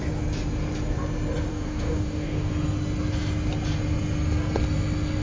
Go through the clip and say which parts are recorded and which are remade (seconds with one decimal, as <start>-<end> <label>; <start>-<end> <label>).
0.0-1.5 recorded; 1.5-2.5 remade; 2.5-5.2 recorded